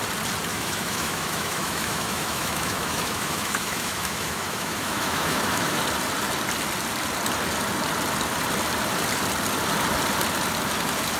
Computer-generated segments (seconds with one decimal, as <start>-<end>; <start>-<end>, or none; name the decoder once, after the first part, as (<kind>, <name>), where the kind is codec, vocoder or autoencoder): 0.5-5.8 (autoencoder, DAC-VAE)